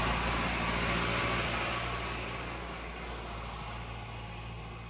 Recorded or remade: recorded